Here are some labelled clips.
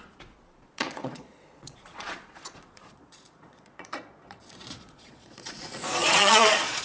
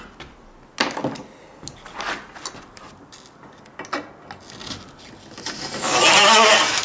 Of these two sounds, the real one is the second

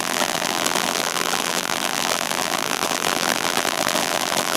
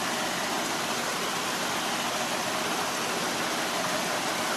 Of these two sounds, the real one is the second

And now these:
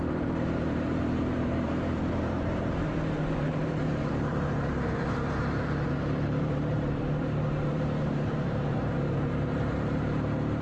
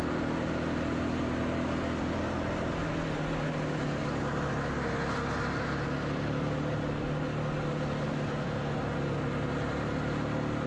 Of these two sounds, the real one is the second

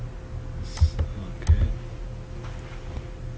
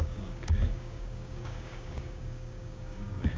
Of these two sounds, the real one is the first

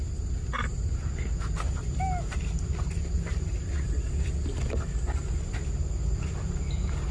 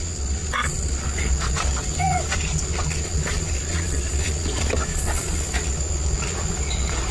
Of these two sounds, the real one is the first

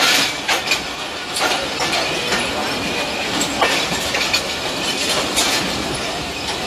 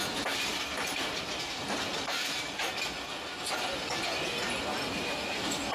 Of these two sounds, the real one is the second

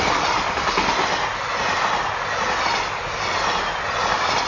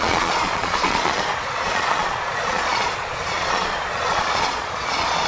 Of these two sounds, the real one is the first